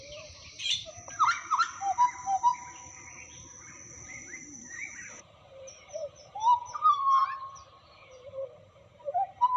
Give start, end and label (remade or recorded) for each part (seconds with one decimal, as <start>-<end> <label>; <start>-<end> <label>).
0.0-2.5 remade; 2.5-3.9 recorded; 3.9-9.6 remade